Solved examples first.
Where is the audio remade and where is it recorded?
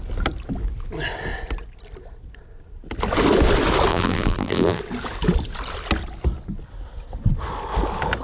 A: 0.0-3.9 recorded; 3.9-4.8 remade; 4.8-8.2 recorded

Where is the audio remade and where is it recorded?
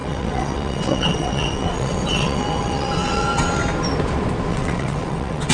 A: 0.0-3.6 remade; 3.6-4.5 recorded; 4.5-5.5 remade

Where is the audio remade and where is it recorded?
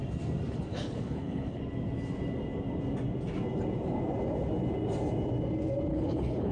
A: 0.0-0.7 recorded; 0.7-1.6 remade; 1.6-5.9 recorded; 5.9-6.5 remade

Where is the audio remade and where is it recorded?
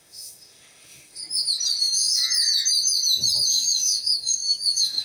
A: 0.0-1.2 remade; 1.2-1.8 recorded; 1.8-2.2 remade; 2.2-3.5 recorded; 3.5-5.0 remade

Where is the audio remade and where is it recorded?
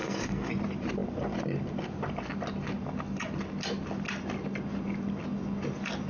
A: 0.0-0.5 remade; 0.5-6.1 recorded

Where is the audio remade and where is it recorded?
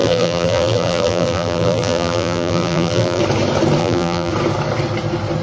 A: 0.0-3.2 remade; 3.2-3.8 recorded; 3.8-4.3 remade; 4.3-5.4 recorded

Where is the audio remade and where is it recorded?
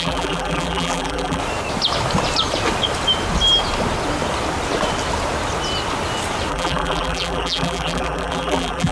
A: 0.0-1.4 remade; 1.4-6.5 recorded; 6.5-8.9 remade